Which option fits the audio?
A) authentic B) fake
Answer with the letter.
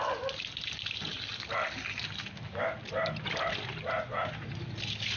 A